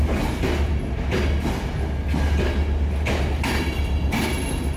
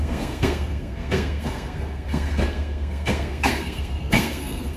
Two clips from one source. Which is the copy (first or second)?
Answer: second